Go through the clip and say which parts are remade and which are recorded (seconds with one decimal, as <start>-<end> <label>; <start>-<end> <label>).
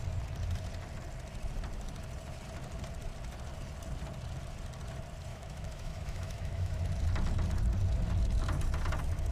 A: 0.0-5.3 recorded; 5.3-6.8 remade; 6.8-9.3 recorded